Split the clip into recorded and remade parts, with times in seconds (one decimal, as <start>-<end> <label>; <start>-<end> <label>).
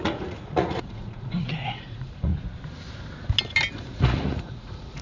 0.0-2.3 remade; 2.3-3.7 recorded; 3.7-5.0 remade